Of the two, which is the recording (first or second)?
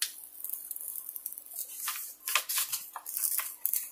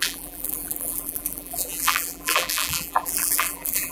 first